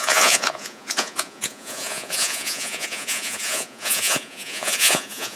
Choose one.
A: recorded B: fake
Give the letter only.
B